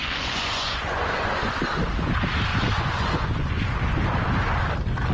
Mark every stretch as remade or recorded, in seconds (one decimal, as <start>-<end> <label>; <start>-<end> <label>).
0.0-1.5 remade; 1.5-2.5 recorded; 2.5-3.5 remade; 3.5-5.1 recorded